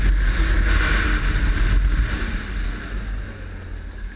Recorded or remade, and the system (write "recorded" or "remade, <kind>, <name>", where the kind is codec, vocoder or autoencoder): recorded